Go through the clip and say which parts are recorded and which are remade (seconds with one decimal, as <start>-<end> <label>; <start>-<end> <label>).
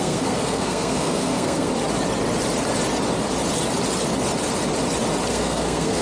0.0-1.7 remade; 1.7-5.3 recorded; 5.3-6.0 remade